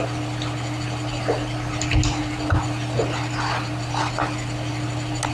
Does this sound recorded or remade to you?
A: recorded